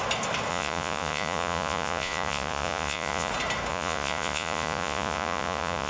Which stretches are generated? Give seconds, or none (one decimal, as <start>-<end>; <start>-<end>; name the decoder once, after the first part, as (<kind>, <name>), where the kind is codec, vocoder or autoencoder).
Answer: 0.5-3.3 (vocoder, Vocos); 3.7-5.9